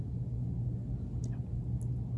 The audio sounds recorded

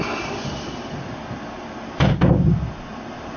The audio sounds remade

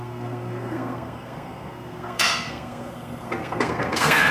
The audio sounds remade